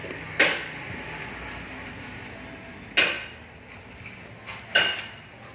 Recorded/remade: recorded